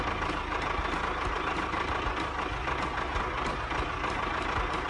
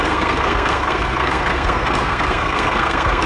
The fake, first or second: second